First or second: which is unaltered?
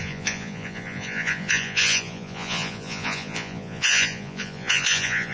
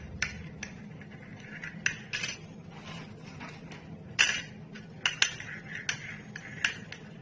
second